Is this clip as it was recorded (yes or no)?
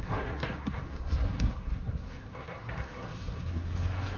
no